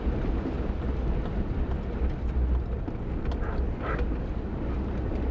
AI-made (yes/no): no